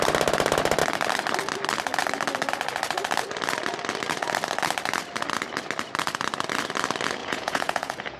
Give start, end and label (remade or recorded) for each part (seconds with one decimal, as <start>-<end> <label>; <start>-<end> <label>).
0.0-7.2 recorded; 7.2-8.2 remade